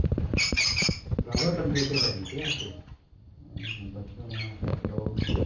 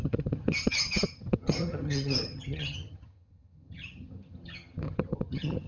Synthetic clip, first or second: second